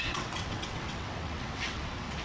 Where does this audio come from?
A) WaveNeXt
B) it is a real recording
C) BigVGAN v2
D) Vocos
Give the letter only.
A